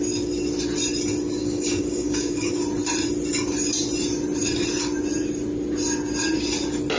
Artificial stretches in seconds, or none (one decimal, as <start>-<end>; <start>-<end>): 1.4-2.5